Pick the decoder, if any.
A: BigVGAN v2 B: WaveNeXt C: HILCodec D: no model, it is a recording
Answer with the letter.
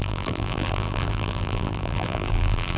A